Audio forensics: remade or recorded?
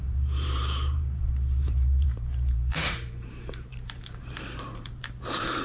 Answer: remade